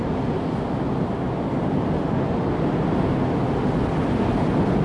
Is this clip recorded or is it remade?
recorded